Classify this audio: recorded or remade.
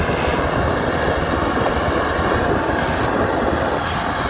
recorded